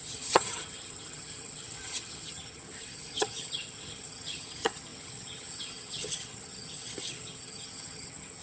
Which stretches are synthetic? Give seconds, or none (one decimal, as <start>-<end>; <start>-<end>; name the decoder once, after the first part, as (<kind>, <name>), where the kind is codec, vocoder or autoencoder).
0.0-8.4 (vocoder, HiFi-GAN)